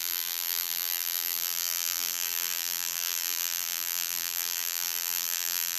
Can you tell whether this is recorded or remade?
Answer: remade